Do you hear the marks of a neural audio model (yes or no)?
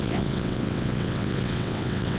yes